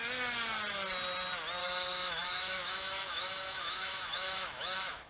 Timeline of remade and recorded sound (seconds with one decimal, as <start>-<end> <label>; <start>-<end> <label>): 0.0-1.6 recorded; 1.6-5.1 remade